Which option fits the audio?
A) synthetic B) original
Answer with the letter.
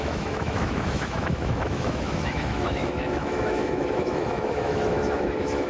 A